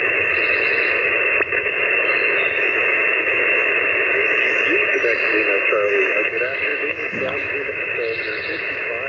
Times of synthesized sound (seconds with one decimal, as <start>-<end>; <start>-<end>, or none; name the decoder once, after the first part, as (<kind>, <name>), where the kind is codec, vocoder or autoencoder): 0.0-9.1 (autoencoder, DAC-VAE)